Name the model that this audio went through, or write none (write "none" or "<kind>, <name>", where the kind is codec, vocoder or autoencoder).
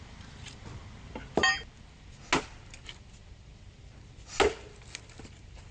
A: none